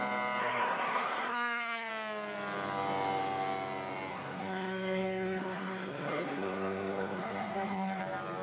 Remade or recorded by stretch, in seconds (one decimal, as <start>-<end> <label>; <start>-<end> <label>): 0.0-0.4 recorded; 0.4-1.9 remade; 1.9-4.1 recorded; 4.1-8.0 remade; 8.0-8.4 recorded

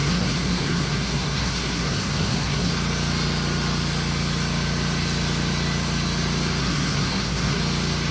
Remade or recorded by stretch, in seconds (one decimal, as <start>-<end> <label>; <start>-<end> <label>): 0.0-2.7 remade; 2.7-6.6 recorded; 6.6-7.6 remade; 7.6-8.1 recorded

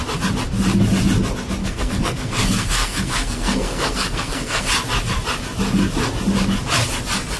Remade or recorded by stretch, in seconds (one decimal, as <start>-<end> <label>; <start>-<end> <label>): 0.0-1.6 recorded; 1.6-4.7 remade; 4.7-7.4 recorded

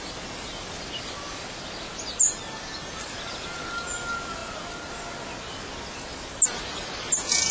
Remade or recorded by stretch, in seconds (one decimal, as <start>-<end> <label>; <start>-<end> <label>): 0.0-7.5 recorded

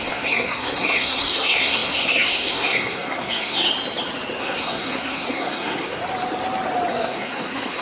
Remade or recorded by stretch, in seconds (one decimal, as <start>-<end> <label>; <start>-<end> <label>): 0.0-3.7 remade; 3.7-4.4 recorded; 4.4-6.0 remade; 6.0-6.9 recorded; 6.9-7.8 remade

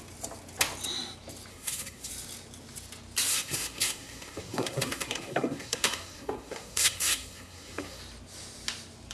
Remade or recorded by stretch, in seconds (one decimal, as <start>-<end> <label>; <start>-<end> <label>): 0.0-1.5 recorded; 1.5-2.1 remade; 2.1-3.3 recorded; 3.3-8.0 remade; 8.0-9.1 recorded